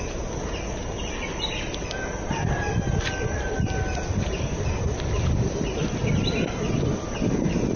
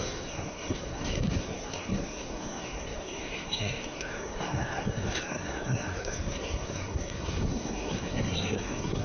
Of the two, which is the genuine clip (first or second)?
first